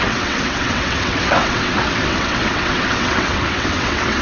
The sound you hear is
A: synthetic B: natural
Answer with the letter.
A